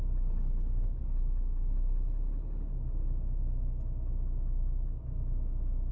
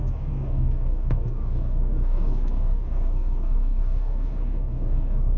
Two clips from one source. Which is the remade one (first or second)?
second